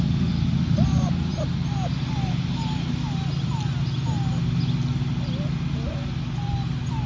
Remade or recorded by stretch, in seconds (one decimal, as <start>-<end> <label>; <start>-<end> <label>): 0.0-7.1 recorded